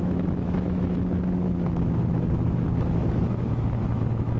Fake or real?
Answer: fake